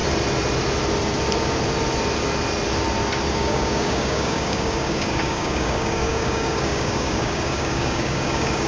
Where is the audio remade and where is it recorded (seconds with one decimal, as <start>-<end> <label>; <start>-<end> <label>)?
0.0-3.3 recorded; 3.3-8.7 remade